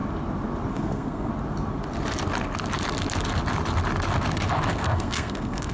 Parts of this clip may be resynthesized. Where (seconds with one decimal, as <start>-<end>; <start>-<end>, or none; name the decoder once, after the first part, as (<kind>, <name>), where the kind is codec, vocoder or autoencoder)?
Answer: 0.7-1.3 (codec, SNAC); 4.7-5.7